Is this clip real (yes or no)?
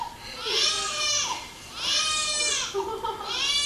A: yes